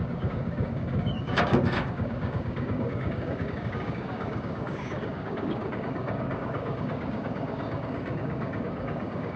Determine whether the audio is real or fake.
fake